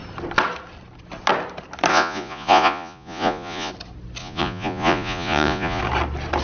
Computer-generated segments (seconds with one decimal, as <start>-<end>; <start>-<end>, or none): 1.9-3.7; 4.2-5.8